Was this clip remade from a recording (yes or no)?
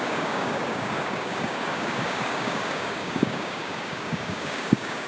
yes